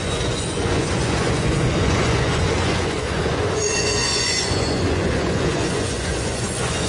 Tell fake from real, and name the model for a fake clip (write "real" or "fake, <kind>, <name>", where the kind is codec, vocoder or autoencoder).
fake, vocoder, Vocos